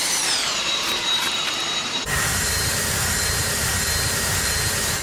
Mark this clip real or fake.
fake